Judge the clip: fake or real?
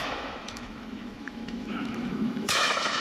fake